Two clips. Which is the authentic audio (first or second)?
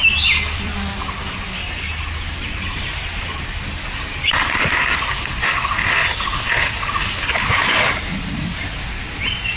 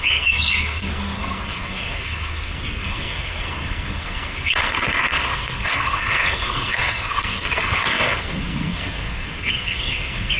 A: first